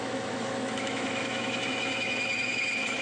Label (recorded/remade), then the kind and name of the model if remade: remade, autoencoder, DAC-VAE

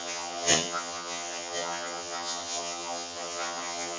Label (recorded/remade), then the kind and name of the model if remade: remade, vocoder, HiFi-GAN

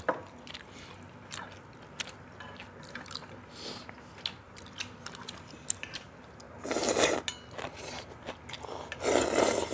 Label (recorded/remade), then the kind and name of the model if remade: recorded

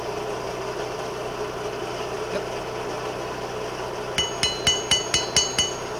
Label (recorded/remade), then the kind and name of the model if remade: recorded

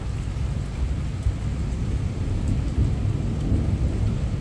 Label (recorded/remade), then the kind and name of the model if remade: recorded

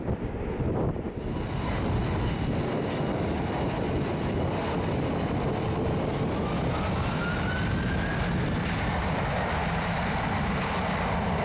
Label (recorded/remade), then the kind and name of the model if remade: recorded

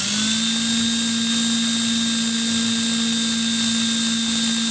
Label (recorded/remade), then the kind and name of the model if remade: recorded